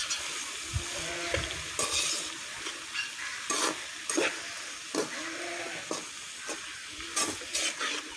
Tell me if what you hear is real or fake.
real